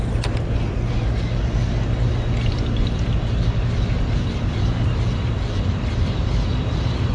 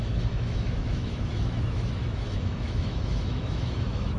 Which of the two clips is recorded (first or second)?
first